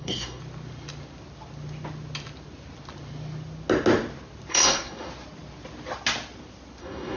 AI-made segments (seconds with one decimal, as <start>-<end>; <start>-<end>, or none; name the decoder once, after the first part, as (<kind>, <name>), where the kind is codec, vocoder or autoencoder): 0.0-0.4 (codec, SNAC); 4.5-5.1; 6.8-7.2